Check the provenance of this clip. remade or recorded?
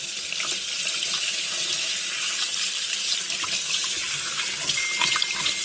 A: recorded